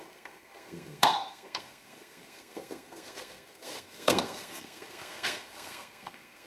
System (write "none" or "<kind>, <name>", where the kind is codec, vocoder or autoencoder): codec, SNAC